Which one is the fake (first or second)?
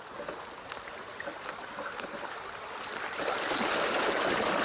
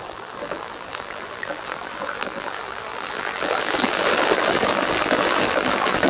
second